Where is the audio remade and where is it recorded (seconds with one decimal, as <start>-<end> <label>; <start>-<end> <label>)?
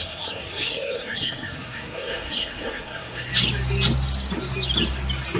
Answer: 0.0-3.3 remade; 3.3-5.4 recorded